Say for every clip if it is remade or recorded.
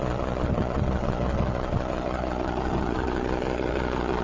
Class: remade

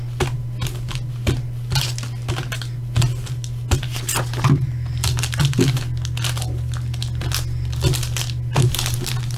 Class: recorded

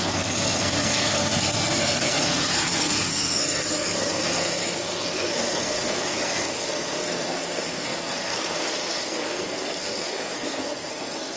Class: remade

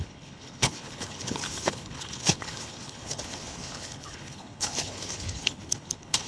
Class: remade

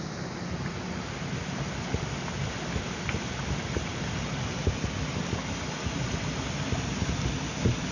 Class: recorded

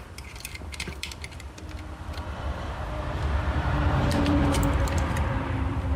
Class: remade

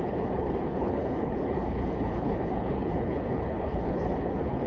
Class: remade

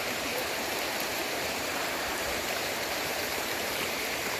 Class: remade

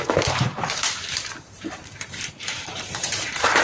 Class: remade